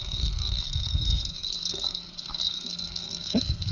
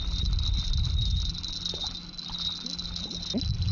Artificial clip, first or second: first